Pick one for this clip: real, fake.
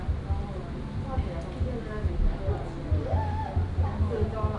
real